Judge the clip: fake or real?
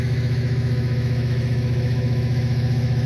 fake